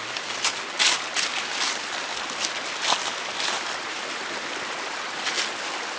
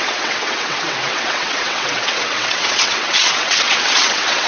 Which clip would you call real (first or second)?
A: first